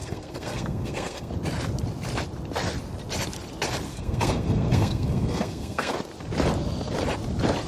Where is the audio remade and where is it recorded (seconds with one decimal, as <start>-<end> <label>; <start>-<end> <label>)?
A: 0.0-1.3 remade; 1.3-3.9 recorded; 3.9-5.9 remade; 5.9-7.7 recorded